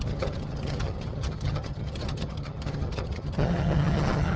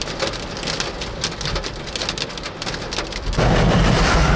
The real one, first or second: second